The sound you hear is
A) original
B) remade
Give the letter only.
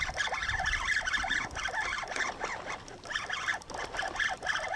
A